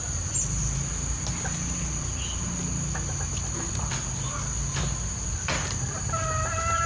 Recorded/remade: recorded